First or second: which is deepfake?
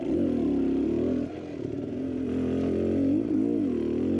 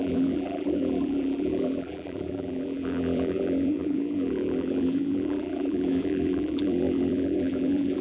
second